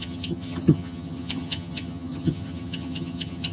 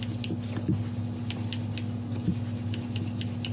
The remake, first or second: first